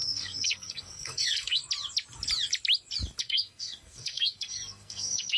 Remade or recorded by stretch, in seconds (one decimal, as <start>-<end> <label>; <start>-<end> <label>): 0.0-1.6 remade; 1.6-3.2 recorded; 3.2-5.4 remade